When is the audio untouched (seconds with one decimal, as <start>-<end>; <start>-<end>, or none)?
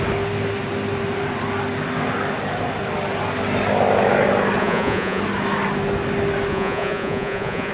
0.0-4.6; 5.2-6.5